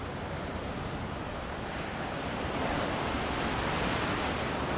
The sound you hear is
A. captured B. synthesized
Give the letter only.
B